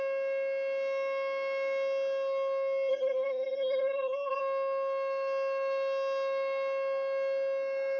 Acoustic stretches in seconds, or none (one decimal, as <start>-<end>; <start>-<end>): 0.0-2.9; 4.4-8.0